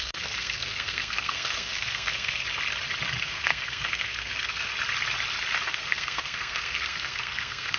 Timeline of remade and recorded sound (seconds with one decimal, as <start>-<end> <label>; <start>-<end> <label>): 0.0-2.4 remade; 2.4-3.2 recorded; 3.2-4.7 remade; 4.7-5.7 recorded; 5.7-7.8 remade